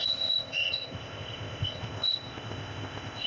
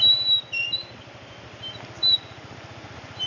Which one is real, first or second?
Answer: second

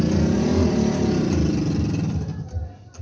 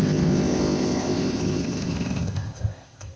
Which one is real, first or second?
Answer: first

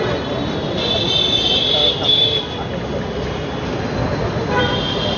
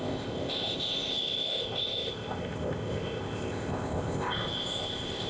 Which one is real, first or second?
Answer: first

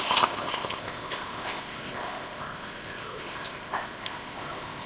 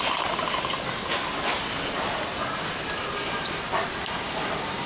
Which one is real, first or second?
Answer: second